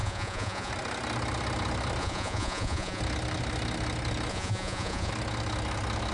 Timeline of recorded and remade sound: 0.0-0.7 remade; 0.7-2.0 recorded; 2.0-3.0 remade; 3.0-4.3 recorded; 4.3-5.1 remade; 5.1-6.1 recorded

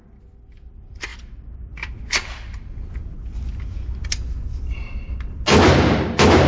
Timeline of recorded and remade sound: 0.0-6.5 recorded

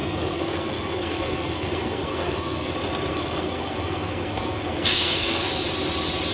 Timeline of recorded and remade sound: 0.0-2.7 remade; 2.7-3.1 recorded; 3.1-5.5 remade; 5.5-6.3 recorded